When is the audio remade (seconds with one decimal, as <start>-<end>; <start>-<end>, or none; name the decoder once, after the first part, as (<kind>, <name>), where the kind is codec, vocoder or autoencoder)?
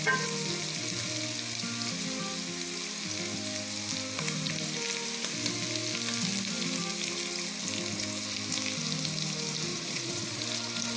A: 9.7-10.4 (vocoder, Vocos)